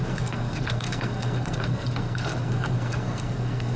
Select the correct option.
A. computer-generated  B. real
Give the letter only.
A